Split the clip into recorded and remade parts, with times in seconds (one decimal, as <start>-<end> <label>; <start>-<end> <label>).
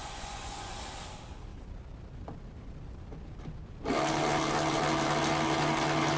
0.0-0.7 remade; 0.7-6.2 recorded